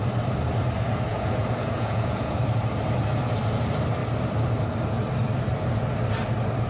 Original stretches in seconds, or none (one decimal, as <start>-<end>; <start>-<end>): 0.0-1.1; 2.4-6.7